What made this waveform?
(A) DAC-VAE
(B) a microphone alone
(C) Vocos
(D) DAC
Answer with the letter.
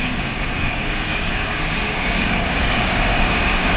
D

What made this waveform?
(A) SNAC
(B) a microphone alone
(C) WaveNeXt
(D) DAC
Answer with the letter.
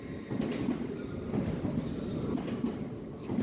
B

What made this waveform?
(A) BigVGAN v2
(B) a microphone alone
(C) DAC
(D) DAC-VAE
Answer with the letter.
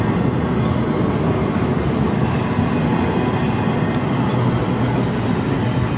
B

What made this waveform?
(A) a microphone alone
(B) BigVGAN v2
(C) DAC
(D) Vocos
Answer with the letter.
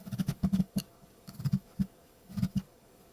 C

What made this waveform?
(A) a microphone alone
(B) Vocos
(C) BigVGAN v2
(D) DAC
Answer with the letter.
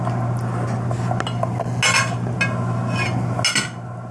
A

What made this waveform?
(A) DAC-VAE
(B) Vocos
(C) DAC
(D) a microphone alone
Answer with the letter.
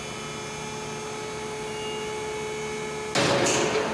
D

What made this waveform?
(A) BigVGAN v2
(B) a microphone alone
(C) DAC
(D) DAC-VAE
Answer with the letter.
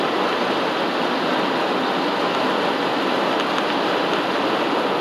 B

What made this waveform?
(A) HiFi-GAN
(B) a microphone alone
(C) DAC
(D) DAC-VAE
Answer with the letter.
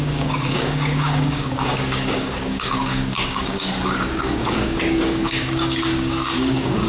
C